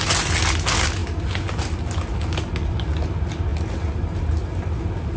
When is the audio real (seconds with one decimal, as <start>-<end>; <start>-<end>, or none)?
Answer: 0.0-5.2

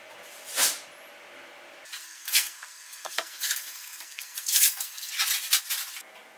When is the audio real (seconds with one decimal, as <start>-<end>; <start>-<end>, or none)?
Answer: 0.0-2.0; 5.1-6.4

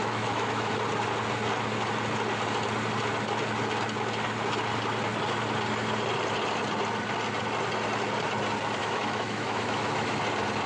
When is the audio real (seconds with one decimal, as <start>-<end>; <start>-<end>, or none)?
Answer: 0.7-8.8; 10.1-10.7

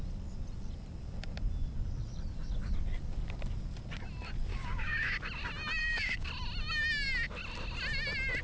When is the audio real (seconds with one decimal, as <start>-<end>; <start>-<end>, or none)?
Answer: 0.0-4.5; 5.1-5.8; 6.3-8.4

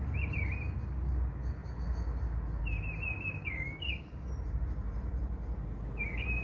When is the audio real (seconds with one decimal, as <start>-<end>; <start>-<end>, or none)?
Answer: 0.0-3.1; 4.3-6.4

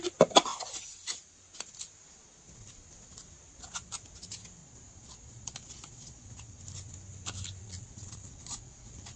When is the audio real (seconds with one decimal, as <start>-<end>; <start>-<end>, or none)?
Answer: 0.0-4.6; 6.6-7.6

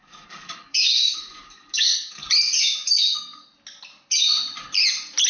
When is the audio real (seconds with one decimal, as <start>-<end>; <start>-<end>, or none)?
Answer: 2.2-3.0; 3.4-5.3